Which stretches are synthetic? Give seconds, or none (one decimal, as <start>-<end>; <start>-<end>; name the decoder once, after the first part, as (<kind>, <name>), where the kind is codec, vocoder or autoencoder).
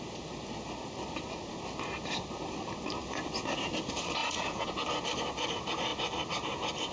4.2-4.7 (vocoder, Vocos)